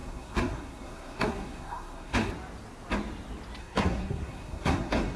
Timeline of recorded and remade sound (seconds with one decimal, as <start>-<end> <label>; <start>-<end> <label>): 0.0-2.3 remade; 2.3-3.6 recorded; 3.6-5.2 remade